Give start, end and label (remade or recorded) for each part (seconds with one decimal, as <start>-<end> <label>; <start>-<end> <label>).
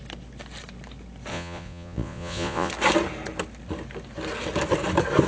0.0-1.3 recorded; 1.3-2.7 remade; 2.7-5.3 recorded